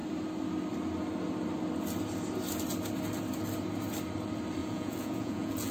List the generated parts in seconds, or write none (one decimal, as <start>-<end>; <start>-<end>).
4.6-5.7